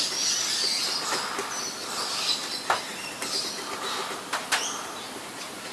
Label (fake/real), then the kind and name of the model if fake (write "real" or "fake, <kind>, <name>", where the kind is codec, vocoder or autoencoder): real